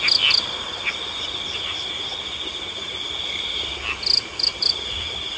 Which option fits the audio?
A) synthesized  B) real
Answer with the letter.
B